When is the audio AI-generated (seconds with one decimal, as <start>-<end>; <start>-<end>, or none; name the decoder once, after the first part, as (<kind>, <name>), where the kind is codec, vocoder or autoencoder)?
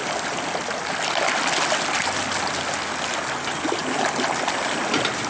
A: none